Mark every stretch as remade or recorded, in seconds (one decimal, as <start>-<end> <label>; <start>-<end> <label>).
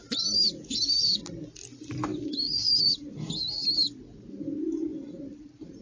0.0-0.6 remade; 0.6-2.1 recorded; 2.1-3.9 remade; 3.9-4.9 recorded; 4.9-5.8 remade